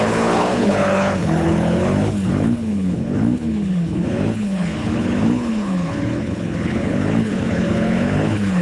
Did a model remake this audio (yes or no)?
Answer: yes